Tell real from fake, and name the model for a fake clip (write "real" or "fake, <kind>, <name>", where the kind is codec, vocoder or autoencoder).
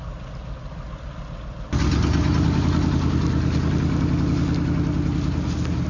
real